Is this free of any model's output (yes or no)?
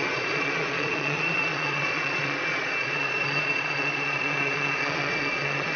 no